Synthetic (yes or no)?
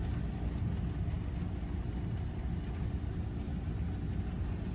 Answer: no